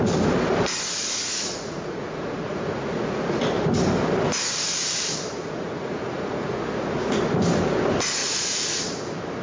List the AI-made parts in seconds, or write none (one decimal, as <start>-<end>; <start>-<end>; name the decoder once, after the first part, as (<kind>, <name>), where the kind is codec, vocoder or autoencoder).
1.0-3.4 (vocoder, Vocos); 5.3-7.2; 8.2-8.8